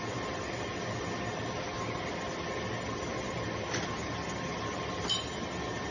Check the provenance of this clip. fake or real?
real